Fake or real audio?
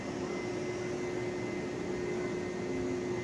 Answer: real